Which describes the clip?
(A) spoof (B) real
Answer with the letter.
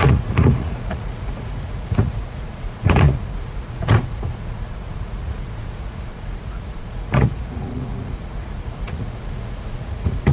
A